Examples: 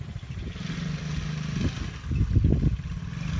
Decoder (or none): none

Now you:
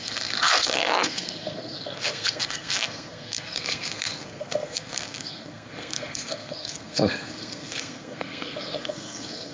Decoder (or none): codec, SNAC